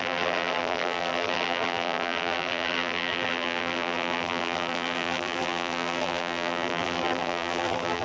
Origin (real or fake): fake